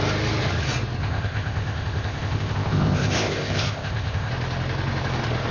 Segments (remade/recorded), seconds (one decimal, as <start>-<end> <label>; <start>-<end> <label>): 0.0-1.0 recorded; 1.0-4.3 remade; 4.3-5.5 recorded